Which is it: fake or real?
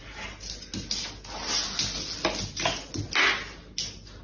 real